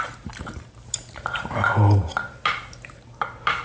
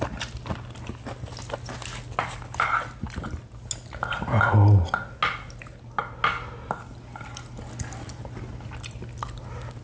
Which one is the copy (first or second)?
first